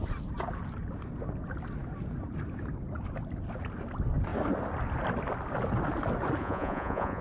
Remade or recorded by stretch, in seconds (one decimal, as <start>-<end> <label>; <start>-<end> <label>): 0.0-6.4 recorded; 6.4-7.2 remade